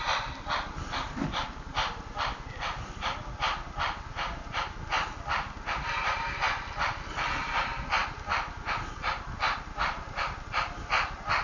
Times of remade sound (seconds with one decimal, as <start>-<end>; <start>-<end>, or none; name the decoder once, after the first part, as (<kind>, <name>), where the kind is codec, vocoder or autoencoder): none